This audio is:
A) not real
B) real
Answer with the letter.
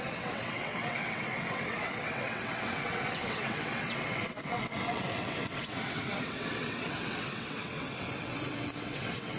A